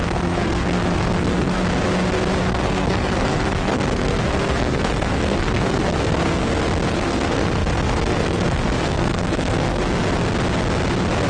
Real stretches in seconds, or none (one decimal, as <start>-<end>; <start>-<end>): 1.6-2.4; 6.4-6.9; 9.8-11.3